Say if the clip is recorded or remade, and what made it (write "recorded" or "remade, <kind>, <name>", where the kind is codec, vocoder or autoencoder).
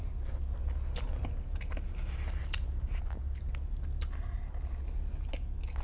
recorded